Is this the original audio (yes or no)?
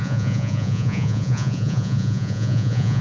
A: no